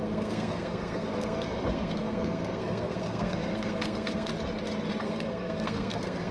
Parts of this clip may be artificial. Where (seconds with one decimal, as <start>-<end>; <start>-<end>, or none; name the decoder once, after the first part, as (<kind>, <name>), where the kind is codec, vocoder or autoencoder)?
0.0-4.3 (codec, SNAC); 5.0-6.3